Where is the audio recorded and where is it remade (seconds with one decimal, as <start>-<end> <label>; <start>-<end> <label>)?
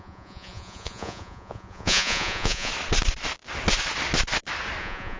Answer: 0.0-2.7 remade; 2.7-4.8 recorded; 4.8-5.2 remade